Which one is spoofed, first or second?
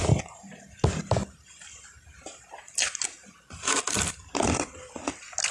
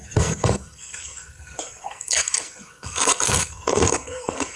second